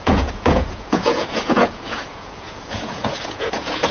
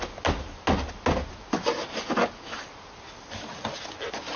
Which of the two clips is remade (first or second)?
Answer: first